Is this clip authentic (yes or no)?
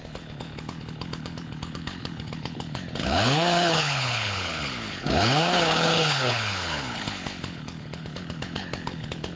no